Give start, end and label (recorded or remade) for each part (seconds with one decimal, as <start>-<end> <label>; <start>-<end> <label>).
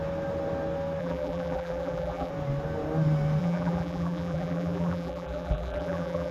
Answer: 0.0-1.0 recorded; 1.0-2.3 remade; 2.3-3.4 recorded; 3.4-6.3 remade